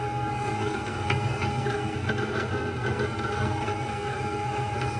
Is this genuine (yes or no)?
no